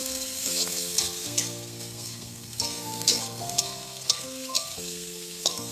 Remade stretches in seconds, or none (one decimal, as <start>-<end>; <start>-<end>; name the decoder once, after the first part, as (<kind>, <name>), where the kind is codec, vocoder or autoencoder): 0.0-5.7 (codec, SNAC)